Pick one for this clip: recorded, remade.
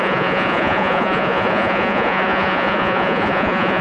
remade